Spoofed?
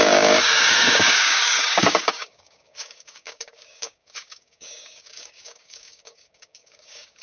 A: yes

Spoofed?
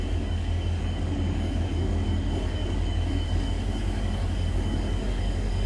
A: yes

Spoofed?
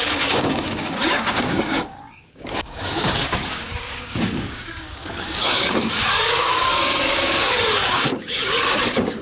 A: yes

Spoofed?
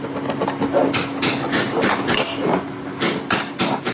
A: no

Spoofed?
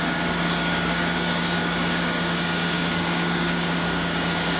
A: yes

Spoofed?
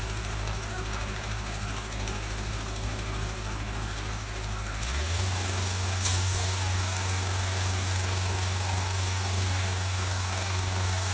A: yes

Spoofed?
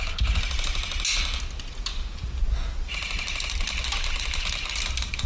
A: no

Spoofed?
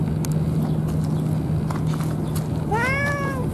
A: no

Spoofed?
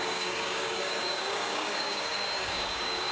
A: yes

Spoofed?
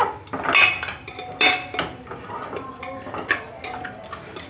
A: no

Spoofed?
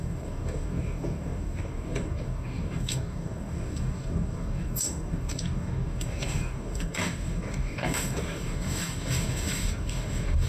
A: yes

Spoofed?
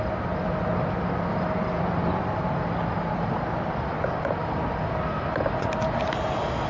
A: no